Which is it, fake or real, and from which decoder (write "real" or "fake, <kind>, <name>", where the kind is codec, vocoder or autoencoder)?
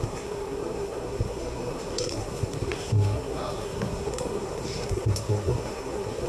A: fake, codec, SNAC